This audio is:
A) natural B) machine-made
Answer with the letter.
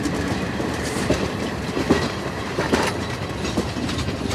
B